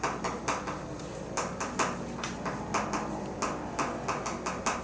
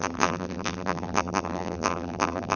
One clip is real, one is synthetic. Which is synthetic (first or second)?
second